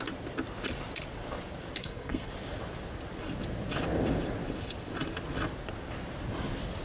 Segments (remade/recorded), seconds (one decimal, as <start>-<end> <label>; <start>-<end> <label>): 0.0-1.8 recorded; 1.8-2.3 remade; 2.3-6.8 recorded